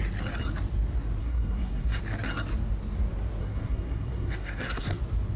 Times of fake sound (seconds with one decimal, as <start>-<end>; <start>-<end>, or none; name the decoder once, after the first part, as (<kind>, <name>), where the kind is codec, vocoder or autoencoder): 1.2-2.0 (codec, SNAC); 3.4-5.0